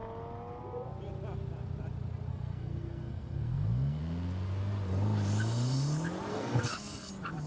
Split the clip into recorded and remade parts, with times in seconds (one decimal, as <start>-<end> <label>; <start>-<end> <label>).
0.0-2.3 recorded; 2.3-4.0 remade; 4.0-6.3 recorded; 6.3-7.1 remade; 7.1-7.5 recorded